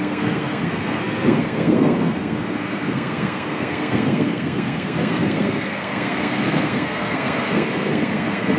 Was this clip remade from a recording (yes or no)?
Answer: yes